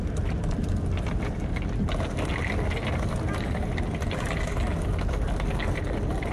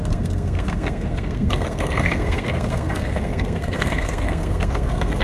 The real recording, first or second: first